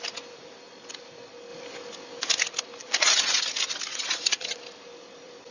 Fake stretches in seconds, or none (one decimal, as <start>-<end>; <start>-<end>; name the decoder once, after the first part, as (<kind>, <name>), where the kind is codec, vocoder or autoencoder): 2.8-3.4 (vocoder, Vocos); 3.9-4.6

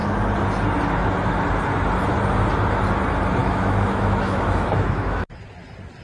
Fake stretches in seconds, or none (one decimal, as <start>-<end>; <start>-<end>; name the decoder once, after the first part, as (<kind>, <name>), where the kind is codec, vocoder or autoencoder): 3.4-5.3 (autoencoder, DAC-VAE)

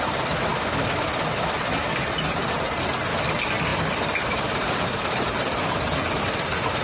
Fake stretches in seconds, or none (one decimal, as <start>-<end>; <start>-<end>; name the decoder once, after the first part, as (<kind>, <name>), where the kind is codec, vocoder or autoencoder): none